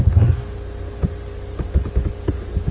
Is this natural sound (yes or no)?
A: yes